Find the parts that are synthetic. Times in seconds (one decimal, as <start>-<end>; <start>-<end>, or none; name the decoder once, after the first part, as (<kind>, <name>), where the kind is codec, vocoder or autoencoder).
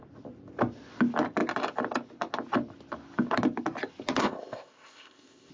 4.2-5.5 (codec, ZipCodec)